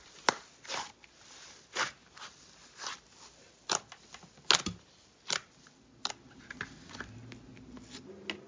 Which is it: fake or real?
real